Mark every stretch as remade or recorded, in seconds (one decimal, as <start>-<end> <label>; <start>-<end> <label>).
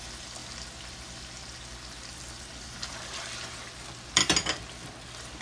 0.0-5.4 recorded